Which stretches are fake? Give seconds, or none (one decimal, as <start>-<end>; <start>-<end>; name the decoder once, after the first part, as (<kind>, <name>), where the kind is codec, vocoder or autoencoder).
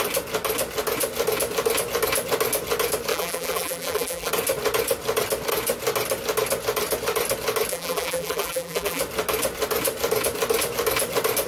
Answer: 3.1-4.3 (vocoder, BigVGAN v2); 7.7-9.0